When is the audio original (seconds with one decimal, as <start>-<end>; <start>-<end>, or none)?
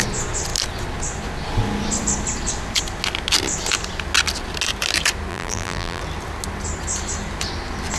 0.0-5.3; 6.0-8.0